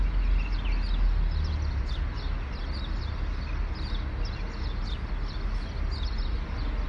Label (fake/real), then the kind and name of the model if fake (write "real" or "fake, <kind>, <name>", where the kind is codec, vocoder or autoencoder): real